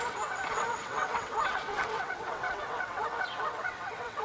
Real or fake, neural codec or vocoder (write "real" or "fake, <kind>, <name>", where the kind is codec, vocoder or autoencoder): fake, vocoder, WaveNeXt